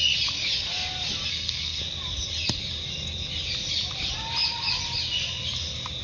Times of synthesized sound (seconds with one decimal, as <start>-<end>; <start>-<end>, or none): 1.3-1.8